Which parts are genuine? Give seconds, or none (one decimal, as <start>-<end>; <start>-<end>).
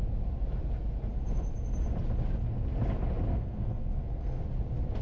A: 0.0-3.3; 4.4-5.0